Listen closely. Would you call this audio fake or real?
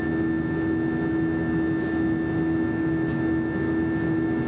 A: real